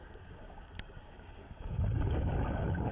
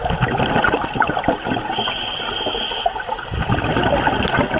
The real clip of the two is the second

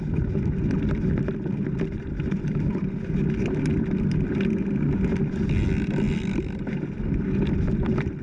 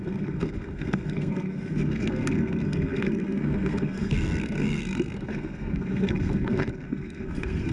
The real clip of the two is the first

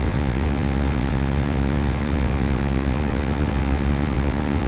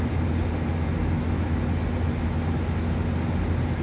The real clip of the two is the second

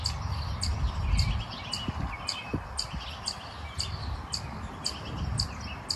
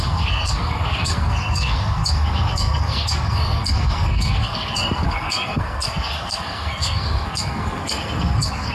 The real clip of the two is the first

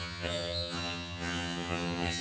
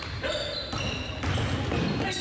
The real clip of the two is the second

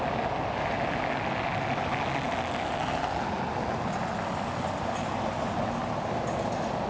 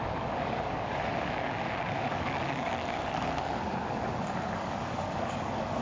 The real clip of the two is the first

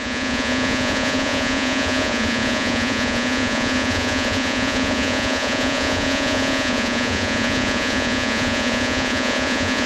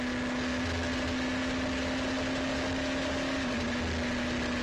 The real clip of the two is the second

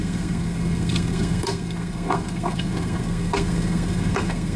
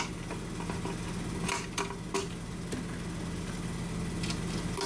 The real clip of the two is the second